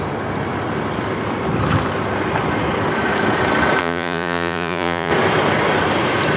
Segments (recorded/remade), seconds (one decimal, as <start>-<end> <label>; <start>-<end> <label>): 0.0-3.8 recorded; 3.8-5.1 remade; 5.1-6.4 recorded